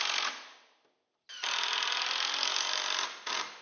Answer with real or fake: real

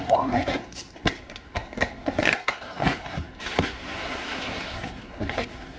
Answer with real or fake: fake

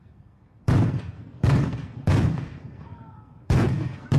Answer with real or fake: fake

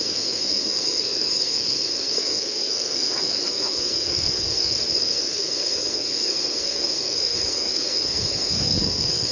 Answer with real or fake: fake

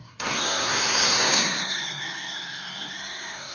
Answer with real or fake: fake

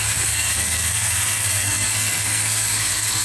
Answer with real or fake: fake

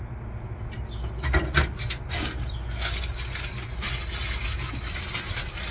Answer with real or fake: real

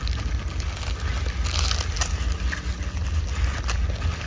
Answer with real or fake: real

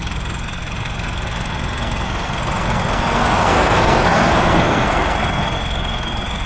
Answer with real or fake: fake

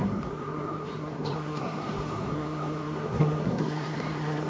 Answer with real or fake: fake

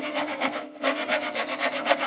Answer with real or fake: fake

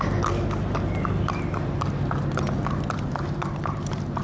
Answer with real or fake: real